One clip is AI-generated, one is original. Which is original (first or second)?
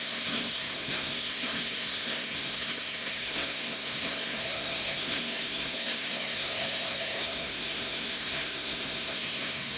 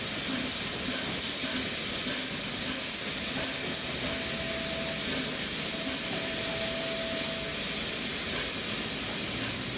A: second